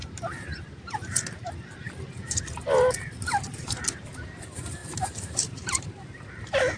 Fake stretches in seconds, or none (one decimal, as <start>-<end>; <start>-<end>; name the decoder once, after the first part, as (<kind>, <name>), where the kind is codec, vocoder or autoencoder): 0.0-6.8 (vocoder, BigVGAN v2)